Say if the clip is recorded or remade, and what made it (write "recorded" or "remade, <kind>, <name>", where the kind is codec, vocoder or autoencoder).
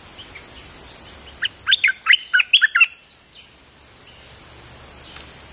recorded